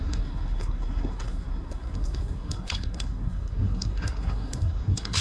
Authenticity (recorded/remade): remade